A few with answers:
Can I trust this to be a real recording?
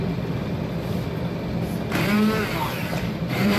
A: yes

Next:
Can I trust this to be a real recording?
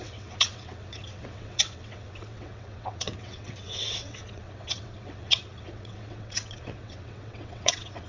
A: no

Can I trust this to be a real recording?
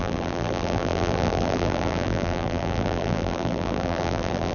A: no